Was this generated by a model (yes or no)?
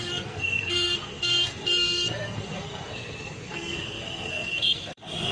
yes